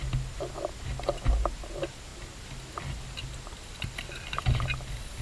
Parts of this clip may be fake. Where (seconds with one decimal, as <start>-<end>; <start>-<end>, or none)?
none